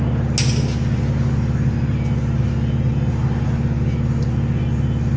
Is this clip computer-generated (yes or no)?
no